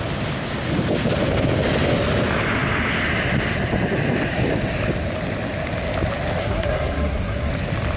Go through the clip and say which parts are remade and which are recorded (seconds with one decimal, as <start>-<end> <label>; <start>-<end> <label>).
0.0-6.4 recorded; 6.4-7.5 remade; 7.5-8.0 recorded